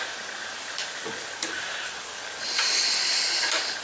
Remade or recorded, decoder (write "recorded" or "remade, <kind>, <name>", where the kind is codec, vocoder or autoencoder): recorded